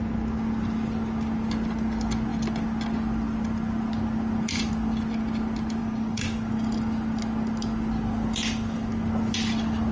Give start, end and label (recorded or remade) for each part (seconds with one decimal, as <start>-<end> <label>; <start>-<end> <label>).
0.0-5.8 recorded; 5.8-6.5 remade; 6.5-9.9 recorded